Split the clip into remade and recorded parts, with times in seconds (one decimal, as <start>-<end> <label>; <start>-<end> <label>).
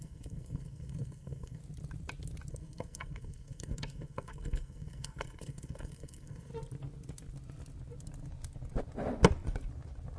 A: 0.0-1.6 remade; 1.6-2.5 recorded; 2.5-6.5 remade; 6.5-10.2 recorded